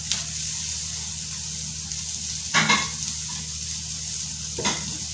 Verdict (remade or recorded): recorded